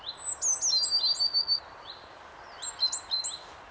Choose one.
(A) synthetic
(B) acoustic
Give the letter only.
B